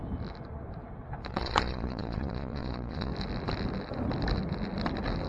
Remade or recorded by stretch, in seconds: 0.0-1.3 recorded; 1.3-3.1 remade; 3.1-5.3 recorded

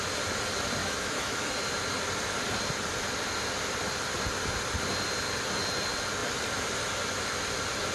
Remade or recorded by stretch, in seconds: 0.0-0.8 recorded; 0.8-1.5 remade; 1.5-7.9 recorded